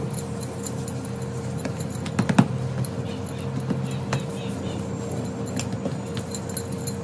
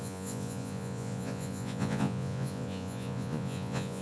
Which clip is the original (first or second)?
first